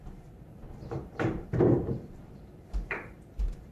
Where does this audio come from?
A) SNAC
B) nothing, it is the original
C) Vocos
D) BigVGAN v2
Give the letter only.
D